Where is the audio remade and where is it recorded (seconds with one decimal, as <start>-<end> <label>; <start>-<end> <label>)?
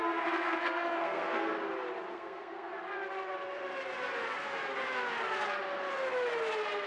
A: 0.0-1.5 remade; 1.5-2.1 recorded; 2.1-2.7 remade; 2.7-6.9 recorded